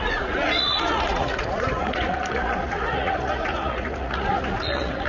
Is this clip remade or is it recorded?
remade